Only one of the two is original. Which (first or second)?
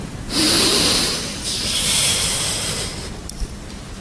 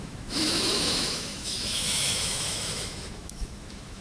first